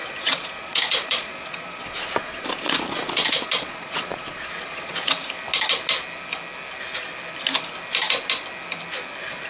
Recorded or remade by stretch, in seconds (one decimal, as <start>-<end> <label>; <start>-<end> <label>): 0.0-5.1 remade; 5.1-9.5 recorded